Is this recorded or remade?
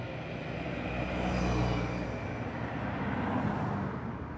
recorded